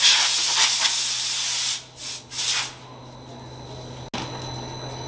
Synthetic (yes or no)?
no